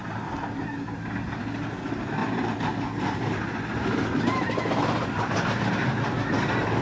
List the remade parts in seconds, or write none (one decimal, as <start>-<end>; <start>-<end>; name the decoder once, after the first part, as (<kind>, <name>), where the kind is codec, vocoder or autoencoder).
0.0-0.7 (vocoder, BigVGAN v2); 2.2-5.7